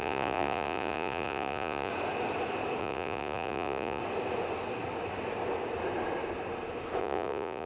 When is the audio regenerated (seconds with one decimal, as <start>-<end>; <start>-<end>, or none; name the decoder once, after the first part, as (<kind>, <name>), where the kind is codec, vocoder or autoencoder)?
0.0-1.9 (vocoder, Vocos); 2.8-4.0; 7.0-7.7